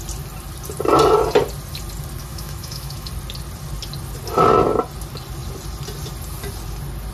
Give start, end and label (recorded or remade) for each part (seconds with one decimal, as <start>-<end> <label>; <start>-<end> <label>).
0.0-2.2 recorded; 2.2-3.1 remade; 3.1-7.1 recorded